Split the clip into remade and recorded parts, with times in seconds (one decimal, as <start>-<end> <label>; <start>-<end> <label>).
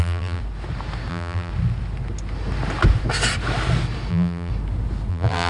0.0-0.4 remade; 0.4-1.1 recorded; 1.1-1.5 remade; 1.5-4.1 recorded; 4.1-4.5 remade; 4.5-5.1 recorded; 5.1-5.5 remade